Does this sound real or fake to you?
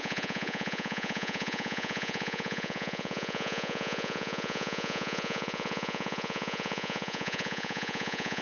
fake